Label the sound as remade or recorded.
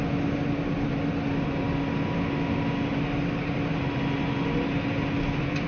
recorded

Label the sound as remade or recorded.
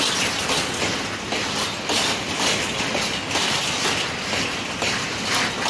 recorded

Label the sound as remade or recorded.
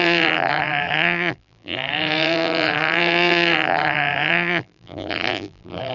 remade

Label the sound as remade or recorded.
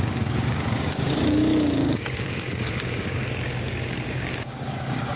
remade